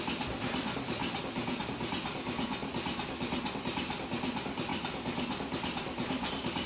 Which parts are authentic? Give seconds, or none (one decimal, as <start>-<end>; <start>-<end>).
1.0-1.6; 2.6-3.6